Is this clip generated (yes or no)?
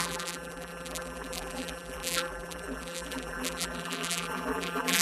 yes